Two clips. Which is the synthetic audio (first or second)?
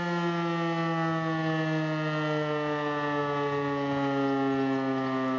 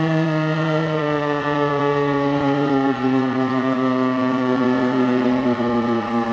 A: second